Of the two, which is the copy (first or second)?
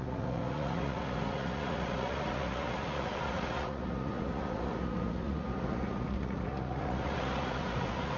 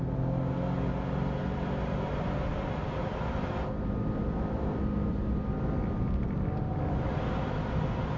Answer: first